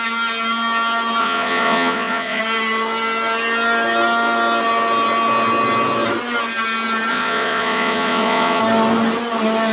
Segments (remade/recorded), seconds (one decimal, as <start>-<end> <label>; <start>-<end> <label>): 0.0-1.2 recorded; 1.2-2.4 remade; 2.4-7.1 recorded; 7.1-8.6 remade; 8.6-9.7 recorded